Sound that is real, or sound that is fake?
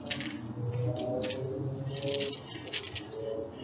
real